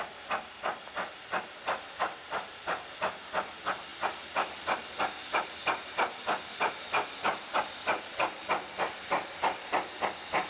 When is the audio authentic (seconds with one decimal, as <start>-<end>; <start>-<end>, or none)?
0.0-10.5